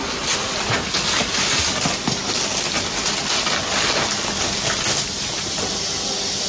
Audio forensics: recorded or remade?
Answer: recorded